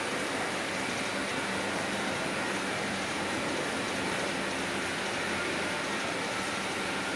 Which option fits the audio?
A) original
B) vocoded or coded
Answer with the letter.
A